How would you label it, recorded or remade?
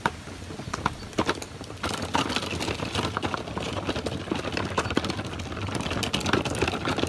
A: recorded